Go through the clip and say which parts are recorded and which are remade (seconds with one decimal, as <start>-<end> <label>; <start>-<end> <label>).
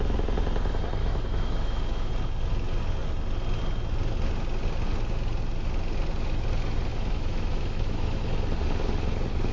0.0-1.0 recorded; 1.0-2.1 remade; 2.1-6.9 recorded; 6.9-8.2 remade; 8.2-9.5 recorded